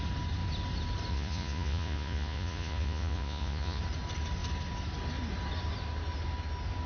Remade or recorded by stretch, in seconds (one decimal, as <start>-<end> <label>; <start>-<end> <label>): 0.0-1.1 recorded; 1.1-3.8 remade; 3.8-6.9 recorded